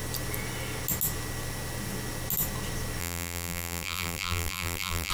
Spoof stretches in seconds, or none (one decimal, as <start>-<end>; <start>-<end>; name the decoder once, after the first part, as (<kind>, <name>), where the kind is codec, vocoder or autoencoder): 3.0-5.1 (vocoder, BigVGAN v2)